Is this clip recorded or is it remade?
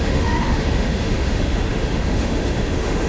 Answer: remade